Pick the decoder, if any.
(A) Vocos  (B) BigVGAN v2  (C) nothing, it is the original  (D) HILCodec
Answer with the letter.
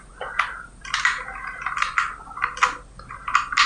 C